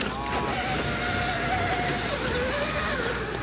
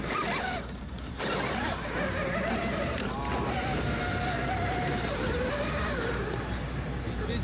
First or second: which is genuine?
first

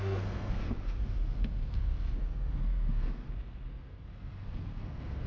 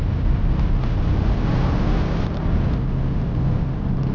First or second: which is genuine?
second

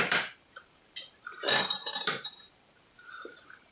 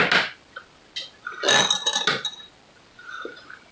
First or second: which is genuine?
second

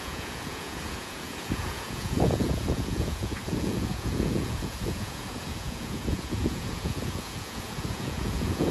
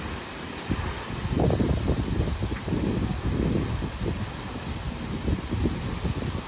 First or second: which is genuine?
second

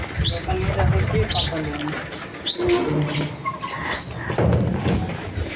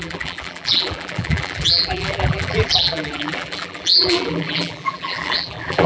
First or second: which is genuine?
first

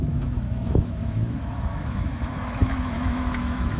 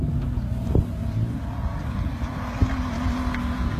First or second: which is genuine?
second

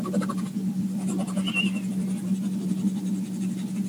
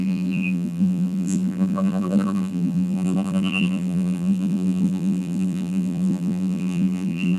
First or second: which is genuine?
first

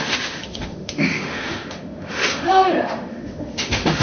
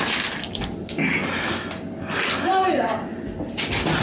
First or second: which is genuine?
second